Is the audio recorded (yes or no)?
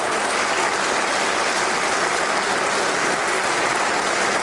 yes